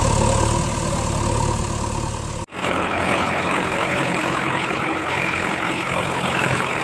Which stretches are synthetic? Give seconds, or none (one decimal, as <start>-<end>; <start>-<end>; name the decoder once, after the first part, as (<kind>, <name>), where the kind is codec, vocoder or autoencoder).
2.6-6.8 (codec, HILCodec)